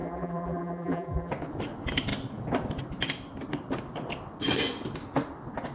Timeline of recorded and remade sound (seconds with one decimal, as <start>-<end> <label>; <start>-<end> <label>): 0.0-1.3 remade; 1.3-5.7 recorded